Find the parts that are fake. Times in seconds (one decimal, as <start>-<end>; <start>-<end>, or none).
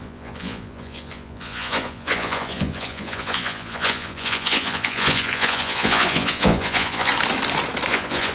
0.0-7.1; 7.9-8.3